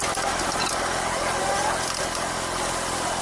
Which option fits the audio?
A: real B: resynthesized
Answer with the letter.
A